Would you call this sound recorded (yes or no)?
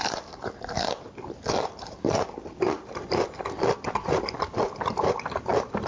no